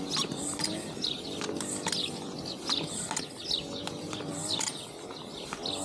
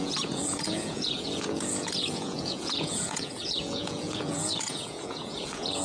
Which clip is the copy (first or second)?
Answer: second